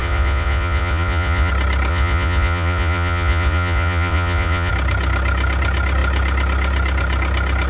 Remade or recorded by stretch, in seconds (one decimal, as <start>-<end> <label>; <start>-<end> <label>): 0.0-1.5 remade; 1.5-1.9 recorded; 1.9-4.7 remade; 4.7-7.7 recorded